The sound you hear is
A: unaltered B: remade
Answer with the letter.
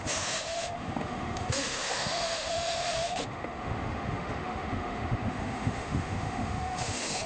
B